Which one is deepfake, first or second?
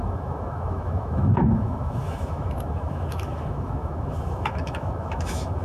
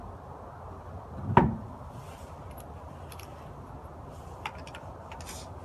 first